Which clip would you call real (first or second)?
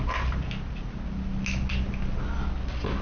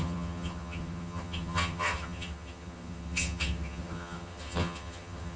first